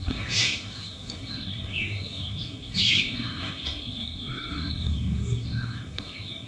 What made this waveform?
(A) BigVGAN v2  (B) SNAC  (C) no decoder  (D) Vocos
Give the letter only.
B